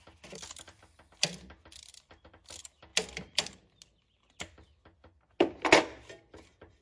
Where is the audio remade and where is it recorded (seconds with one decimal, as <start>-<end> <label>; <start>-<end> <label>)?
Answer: 0.0-6.8 recorded